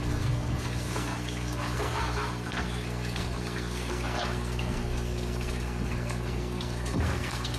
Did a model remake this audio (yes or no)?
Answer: yes